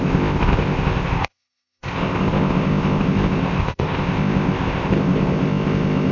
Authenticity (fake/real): fake